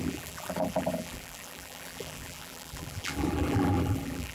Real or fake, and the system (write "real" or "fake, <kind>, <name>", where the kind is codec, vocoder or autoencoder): fake, vocoder, BigVGAN v2